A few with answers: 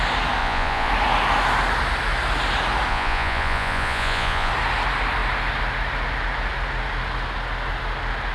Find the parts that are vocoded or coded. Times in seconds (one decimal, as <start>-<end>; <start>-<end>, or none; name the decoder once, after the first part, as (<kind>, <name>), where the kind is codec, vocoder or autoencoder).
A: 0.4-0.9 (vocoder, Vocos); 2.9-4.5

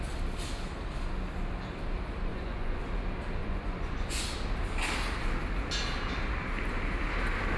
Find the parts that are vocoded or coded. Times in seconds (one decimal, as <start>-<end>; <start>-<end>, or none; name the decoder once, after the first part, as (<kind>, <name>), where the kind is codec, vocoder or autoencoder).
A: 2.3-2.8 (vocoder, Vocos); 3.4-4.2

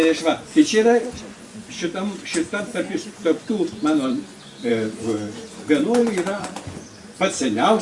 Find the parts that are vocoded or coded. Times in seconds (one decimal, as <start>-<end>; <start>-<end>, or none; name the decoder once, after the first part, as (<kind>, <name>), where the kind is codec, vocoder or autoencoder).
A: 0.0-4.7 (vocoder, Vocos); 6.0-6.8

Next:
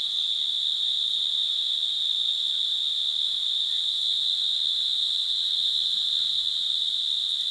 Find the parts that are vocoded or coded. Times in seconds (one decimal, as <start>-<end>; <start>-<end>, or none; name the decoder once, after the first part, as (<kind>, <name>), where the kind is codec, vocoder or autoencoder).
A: none

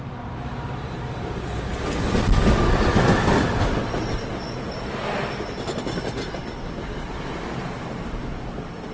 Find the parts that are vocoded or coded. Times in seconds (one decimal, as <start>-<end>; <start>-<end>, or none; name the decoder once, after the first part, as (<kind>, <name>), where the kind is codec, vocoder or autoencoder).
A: none

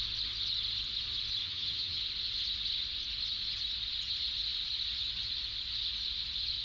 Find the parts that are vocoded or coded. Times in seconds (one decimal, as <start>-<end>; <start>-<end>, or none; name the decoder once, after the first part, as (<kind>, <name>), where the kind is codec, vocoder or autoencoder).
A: 1.4-2.0 (vocoder, HiFi-GAN)